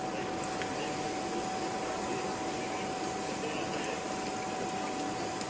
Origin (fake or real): real